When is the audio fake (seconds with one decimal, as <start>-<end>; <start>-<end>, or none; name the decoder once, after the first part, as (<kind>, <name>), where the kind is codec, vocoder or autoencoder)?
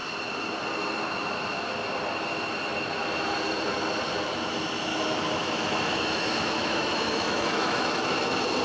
4.9-8.1 (autoencoder, DAC-VAE)